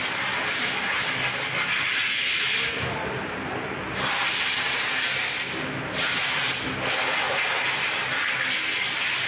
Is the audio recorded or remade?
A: recorded